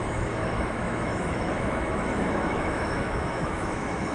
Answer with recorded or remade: remade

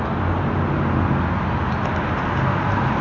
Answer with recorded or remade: recorded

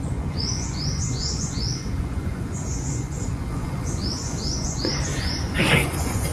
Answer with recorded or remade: remade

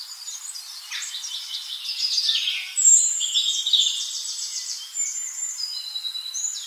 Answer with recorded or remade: remade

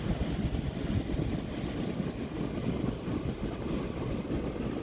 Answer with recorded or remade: recorded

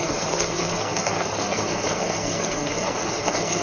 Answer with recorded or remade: remade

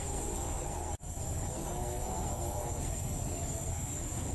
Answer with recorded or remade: remade